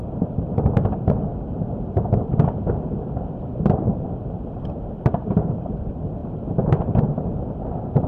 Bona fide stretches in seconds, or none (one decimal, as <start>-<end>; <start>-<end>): 0.0-8.1